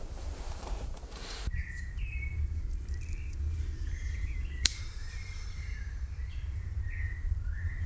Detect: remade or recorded remade